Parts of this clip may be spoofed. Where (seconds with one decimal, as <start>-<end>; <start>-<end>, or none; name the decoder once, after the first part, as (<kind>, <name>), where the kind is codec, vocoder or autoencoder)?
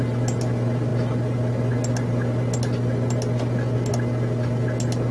none